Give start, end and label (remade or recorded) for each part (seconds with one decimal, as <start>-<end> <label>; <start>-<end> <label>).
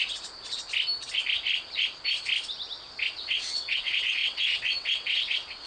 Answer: 0.0-3.2 recorded; 3.2-5.7 remade